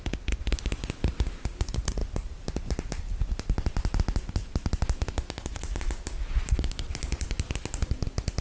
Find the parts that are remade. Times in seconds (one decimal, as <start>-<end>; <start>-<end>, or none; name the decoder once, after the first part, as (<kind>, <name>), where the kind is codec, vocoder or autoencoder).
none